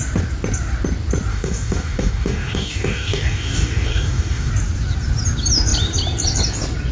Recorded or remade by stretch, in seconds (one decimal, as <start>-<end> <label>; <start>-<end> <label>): 0.0-1.3 recorded; 1.3-4.5 remade; 4.5-6.9 recorded